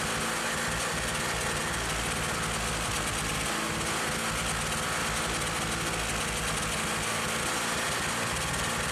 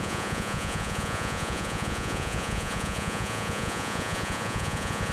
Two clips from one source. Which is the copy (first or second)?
second